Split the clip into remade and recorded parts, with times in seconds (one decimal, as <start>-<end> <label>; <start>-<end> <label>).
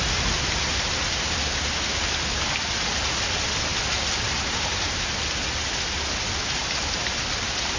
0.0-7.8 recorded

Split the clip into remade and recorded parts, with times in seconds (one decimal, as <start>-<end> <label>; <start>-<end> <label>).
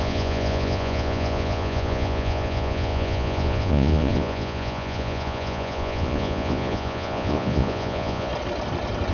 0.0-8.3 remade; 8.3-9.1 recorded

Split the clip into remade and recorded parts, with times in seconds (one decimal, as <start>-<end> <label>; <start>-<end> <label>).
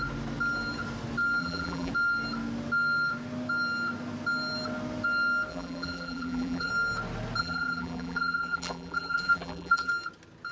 0.0-1.4 recorded; 1.4-1.9 remade; 1.9-5.5 recorded; 5.5-6.7 remade; 6.7-7.4 recorded; 7.4-9.9 remade; 9.9-10.5 recorded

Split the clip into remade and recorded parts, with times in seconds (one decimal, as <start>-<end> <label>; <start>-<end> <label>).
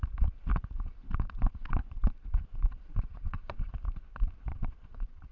0.0-0.5 recorded; 0.5-3.7 remade; 3.7-4.5 recorded; 4.5-5.3 remade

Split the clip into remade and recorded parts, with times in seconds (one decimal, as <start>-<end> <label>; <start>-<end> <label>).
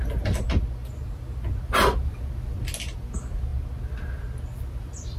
0.0-5.2 recorded